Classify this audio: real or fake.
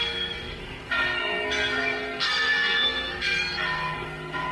fake